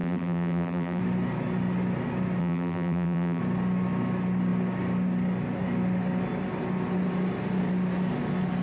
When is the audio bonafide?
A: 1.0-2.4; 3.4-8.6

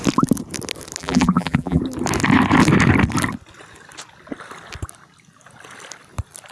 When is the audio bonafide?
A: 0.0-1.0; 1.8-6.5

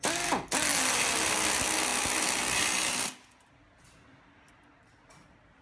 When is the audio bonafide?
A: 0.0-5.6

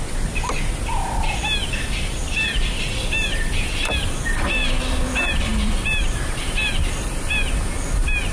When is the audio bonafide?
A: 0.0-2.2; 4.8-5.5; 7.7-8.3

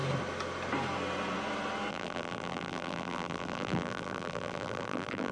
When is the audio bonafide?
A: 0.0-1.9